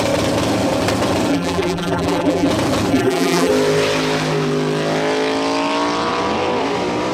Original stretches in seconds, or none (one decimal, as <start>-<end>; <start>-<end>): 0.0-1.3; 2.5-2.9; 3.5-7.1

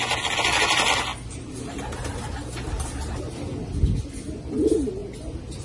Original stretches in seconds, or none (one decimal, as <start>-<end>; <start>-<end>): 0.0-5.6

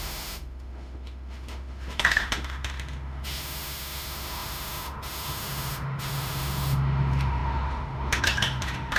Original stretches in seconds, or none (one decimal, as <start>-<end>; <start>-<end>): none

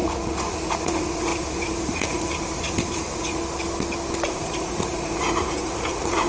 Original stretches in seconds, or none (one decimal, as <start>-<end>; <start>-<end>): 3.4-4.3

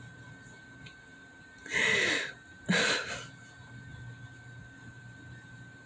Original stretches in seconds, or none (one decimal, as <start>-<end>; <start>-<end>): 0.0-5.9

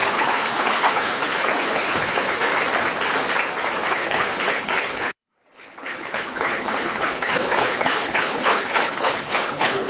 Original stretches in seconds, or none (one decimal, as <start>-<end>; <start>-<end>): 2.5-3.9

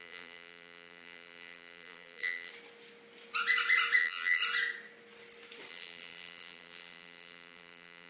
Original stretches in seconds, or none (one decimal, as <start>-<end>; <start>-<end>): 2.5-4.0; 4.4-5.7

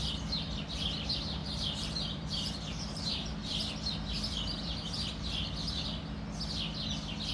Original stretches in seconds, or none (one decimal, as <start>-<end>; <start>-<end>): 0.0-1.4; 3.3-7.3